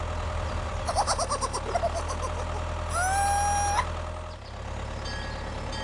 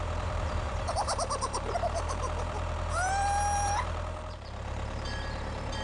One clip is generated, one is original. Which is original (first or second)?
first